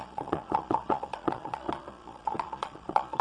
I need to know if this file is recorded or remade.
remade